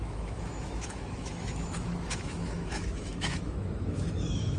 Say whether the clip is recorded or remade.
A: remade